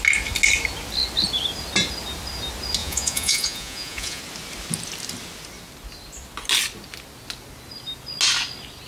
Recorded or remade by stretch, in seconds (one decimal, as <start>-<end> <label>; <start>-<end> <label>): 0.0-2.8 recorded; 2.8-4.2 remade; 4.2-8.9 recorded